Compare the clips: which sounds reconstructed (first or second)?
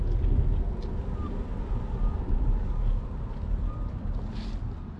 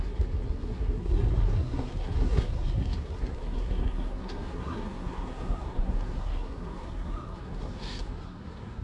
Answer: second